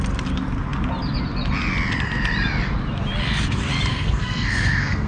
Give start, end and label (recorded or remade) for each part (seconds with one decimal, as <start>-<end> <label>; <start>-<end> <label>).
0.0-3.9 recorded; 3.9-5.1 remade